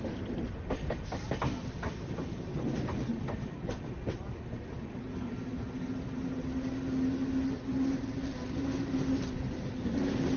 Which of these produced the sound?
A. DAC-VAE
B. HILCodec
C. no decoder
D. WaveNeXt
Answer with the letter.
C